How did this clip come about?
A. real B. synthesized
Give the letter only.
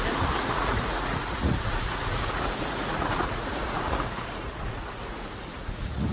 B